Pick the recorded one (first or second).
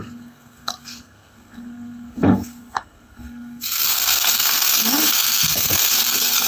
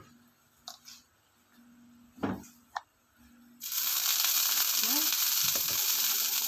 second